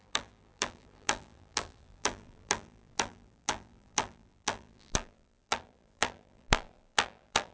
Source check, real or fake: fake